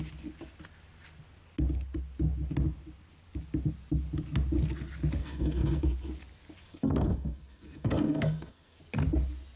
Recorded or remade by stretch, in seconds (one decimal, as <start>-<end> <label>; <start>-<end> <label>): 0.0-5.2 recorded; 5.2-5.8 remade; 5.8-6.6 recorded; 6.6-8.8 remade; 8.8-9.6 recorded

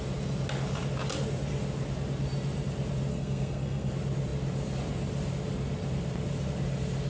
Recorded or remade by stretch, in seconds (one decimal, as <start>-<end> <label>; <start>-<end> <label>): 0.0-3.1 recorded; 3.1-3.9 remade; 3.9-7.1 recorded